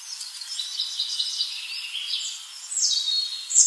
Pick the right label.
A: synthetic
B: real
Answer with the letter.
B